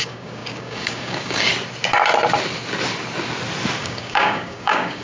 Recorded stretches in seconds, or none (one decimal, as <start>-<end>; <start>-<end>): 1.5-3.8